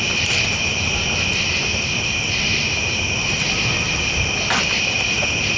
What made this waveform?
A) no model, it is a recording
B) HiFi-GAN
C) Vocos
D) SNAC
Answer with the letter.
A